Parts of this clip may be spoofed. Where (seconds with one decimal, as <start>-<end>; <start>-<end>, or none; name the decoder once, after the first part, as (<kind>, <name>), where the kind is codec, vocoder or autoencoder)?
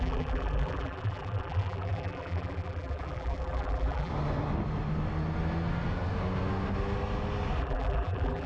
0.0-4.1 (vocoder, BigVGAN v2); 7.6-8.5